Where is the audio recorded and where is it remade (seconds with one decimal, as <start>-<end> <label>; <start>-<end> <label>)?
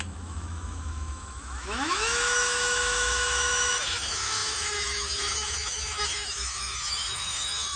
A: 0.0-7.8 remade